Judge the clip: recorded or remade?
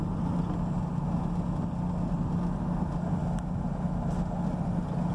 recorded